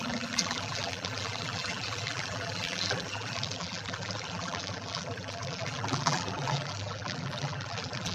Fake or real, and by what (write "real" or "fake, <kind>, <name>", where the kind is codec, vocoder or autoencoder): fake, vocoder, BigVGAN v2